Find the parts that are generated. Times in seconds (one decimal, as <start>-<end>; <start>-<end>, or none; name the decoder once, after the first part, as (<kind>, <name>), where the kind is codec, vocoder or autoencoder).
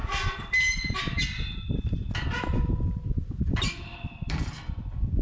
3.9-5.2 (vocoder, BigVGAN v2)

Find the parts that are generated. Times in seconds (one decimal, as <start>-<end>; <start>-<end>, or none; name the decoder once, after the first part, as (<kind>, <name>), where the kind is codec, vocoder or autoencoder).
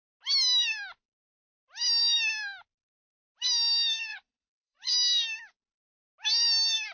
4.1-4.9 (vocoder, Vocos)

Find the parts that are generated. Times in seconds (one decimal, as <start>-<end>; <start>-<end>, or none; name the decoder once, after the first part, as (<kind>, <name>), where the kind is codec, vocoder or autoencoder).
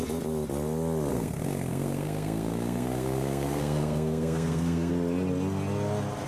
1.1-4.9 (codec, SNAC)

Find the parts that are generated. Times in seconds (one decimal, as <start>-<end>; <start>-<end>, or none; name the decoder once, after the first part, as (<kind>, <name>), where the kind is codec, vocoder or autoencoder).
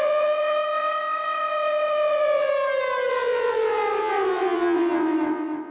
0.0-2.5 (vocoder, WaveNeXt); 3.1-5.7